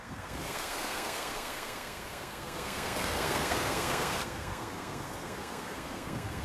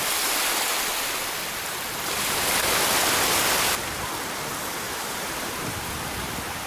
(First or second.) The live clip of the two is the second